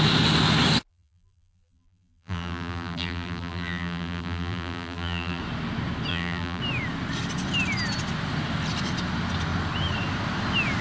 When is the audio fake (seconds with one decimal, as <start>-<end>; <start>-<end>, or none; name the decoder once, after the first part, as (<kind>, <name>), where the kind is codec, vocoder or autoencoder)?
0.9-5.4 (vocoder, BigVGAN v2); 6.1-6.6